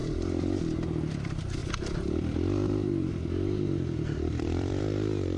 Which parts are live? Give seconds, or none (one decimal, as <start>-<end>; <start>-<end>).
0.0-1.6; 4.8-5.4